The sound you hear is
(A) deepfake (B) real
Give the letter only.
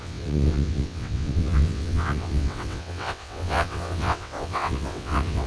A